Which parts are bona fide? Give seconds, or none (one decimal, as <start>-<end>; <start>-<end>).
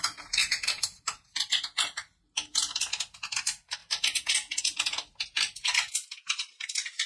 0.0-0.4; 1.6-7.1